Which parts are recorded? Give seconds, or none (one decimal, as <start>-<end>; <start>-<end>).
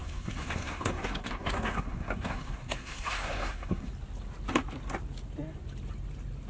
3.9-6.5